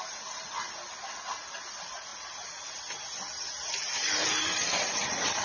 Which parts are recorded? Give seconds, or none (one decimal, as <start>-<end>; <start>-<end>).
0.0-5.4